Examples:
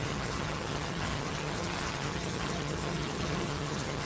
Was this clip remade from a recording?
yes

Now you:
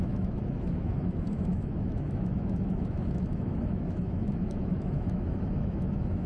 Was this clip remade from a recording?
yes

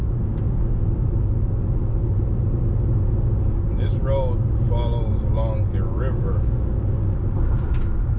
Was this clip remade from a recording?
no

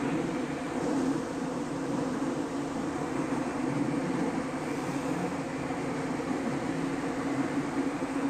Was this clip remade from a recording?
yes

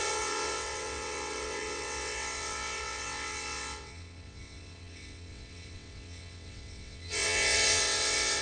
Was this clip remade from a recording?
yes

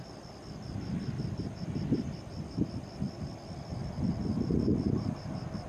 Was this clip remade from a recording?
no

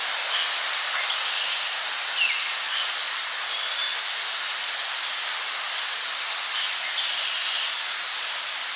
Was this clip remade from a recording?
no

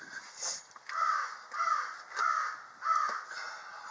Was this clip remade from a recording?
no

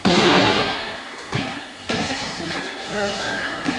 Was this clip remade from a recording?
yes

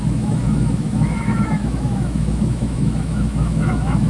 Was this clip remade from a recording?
yes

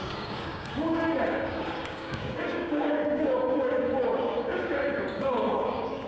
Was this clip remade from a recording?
yes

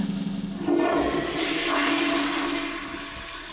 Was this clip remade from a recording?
no